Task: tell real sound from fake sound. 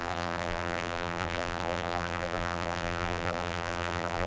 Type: fake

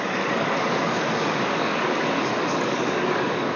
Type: fake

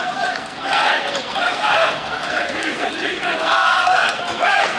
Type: fake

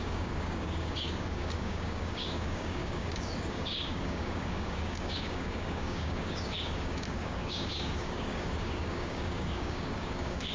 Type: fake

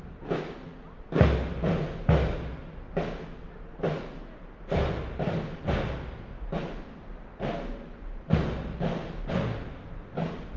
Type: real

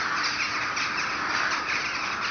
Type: real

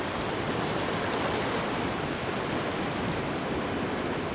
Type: real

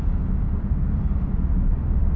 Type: real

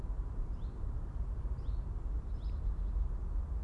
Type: real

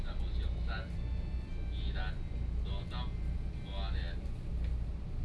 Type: real